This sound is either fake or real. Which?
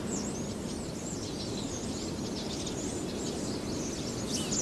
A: real